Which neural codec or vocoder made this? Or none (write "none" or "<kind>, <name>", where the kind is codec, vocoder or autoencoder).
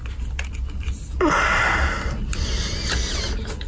none